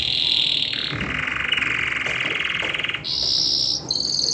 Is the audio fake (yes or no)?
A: no